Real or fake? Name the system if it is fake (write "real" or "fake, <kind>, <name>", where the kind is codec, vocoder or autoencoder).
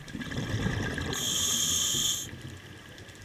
real